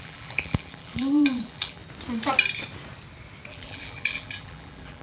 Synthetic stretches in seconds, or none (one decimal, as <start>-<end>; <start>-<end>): 0.0-1.8; 3.5-5.0